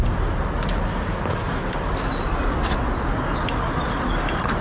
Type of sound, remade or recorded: recorded